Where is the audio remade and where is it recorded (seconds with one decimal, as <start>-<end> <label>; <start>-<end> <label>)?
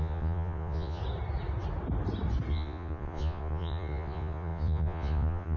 0.0-1.0 remade; 1.0-2.5 recorded; 2.5-5.6 remade